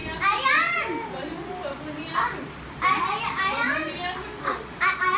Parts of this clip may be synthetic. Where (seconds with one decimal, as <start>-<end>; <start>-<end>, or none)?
none